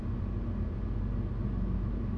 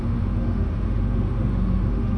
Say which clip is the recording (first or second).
first